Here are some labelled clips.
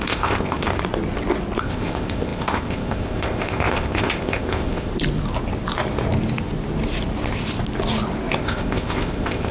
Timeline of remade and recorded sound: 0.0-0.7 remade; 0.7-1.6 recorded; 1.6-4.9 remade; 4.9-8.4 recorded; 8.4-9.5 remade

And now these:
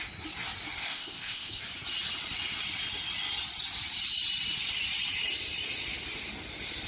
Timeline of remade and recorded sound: 0.0-0.8 recorded; 0.8-1.6 remade; 1.6-6.9 recorded

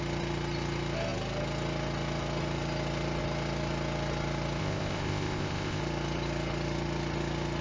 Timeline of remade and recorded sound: 0.0-4.6 recorded; 4.6-5.8 remade; 5.8-7.6 recorded

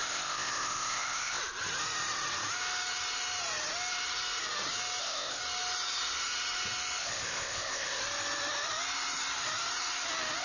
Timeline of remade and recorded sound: 0.0-1.4 remade; 1.4-5.0 recorded; 5.0-5.4 remade; 5.4-7.0 recorded; 7.0-8.0 remade; 8.0-10.4 recorded

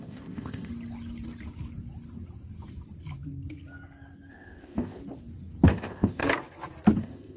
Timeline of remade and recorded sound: 0.0-0.7 remade; 0.7-4.3 recorded; 4.3-5.0 remade; 5.0-5.7 recorded; 5.7-6.2 remade; 6.2-7.0 recorded; 7.0-7.4 remade